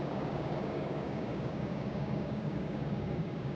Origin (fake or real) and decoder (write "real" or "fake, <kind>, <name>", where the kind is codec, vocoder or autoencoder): fake, codec, DAC